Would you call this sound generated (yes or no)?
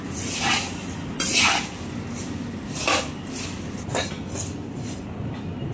no